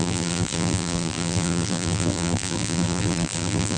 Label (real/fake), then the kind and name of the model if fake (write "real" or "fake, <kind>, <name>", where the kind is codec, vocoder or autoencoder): fake, vocoder, BigVGAN v2